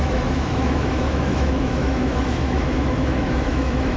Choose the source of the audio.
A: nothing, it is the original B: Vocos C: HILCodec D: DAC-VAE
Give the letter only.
D